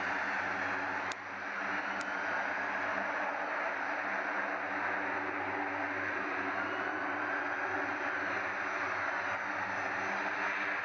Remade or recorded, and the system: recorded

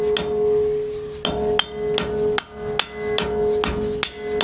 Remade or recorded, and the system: recorded